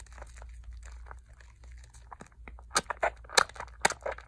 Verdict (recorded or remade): recorded